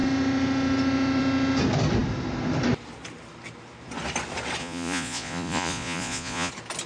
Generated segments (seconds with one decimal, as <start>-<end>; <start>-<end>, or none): 4.6-6.5